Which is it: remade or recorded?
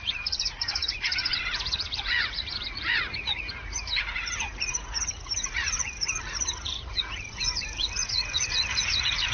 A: remade